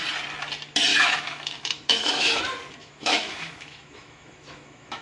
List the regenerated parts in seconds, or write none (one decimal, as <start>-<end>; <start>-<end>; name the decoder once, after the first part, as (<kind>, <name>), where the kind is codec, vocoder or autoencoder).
0.9-2.4 (autoencoder, DAC-VAE); 2.8-5.0